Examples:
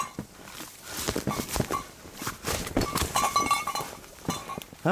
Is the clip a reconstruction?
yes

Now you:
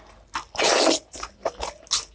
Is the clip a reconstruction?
no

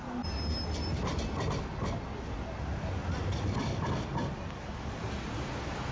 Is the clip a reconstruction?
no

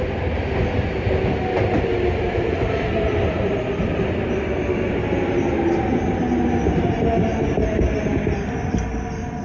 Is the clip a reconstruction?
no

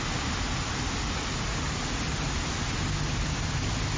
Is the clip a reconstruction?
no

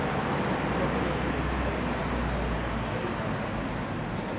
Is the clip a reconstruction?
no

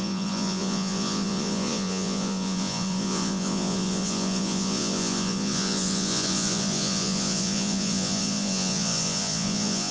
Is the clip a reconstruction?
yes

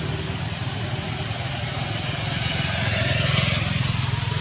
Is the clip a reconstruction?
no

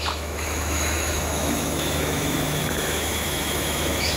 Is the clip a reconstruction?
yes